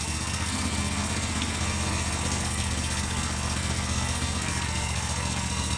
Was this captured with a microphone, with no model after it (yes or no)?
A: no